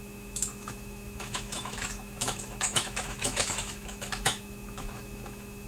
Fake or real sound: fake